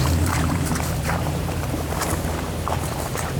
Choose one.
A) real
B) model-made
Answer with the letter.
B